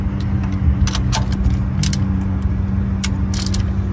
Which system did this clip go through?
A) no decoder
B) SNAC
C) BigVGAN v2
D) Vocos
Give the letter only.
A